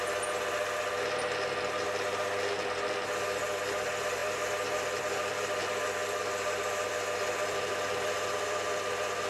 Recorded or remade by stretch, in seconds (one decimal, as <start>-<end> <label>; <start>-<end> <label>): 0.0-9.3 recorded